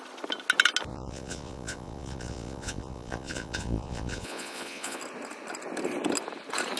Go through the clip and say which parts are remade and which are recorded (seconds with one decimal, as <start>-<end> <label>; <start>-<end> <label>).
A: 0.0-0.9 recorded; 0.9-5.0 remade; 5.0-6.8 recorded